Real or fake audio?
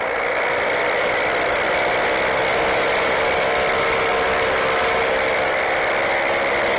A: real